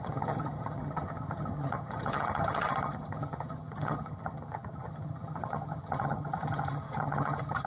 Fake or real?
fake